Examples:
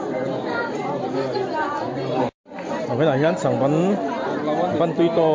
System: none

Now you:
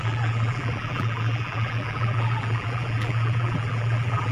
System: vocoder, BigVGAN v2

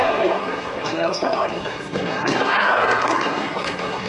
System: codec, SNAC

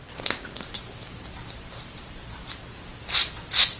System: none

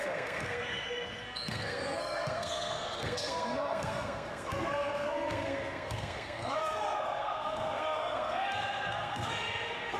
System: codec, SNAC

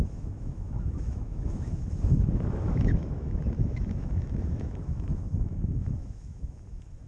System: autoencoder, DAC-VAE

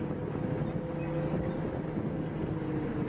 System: none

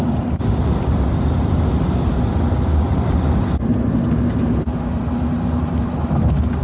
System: none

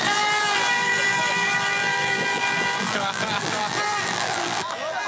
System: vocoder, BigVGAN v2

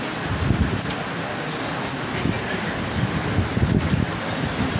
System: none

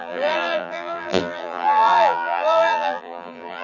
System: vocoder, BigVGAN v2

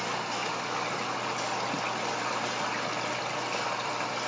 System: none